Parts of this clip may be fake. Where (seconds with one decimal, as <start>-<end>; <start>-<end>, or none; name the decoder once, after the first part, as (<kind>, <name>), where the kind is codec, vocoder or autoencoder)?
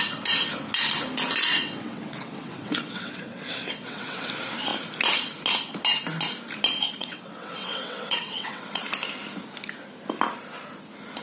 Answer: 1.5-4.3 (vocoder, WaveNeXt); 7.0-8.8